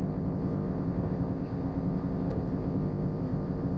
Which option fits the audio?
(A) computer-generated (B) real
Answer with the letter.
A